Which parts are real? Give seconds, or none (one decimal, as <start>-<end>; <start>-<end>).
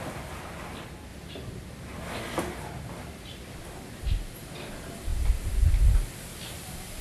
0.0-7.0